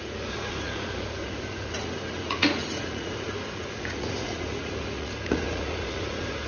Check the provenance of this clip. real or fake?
fake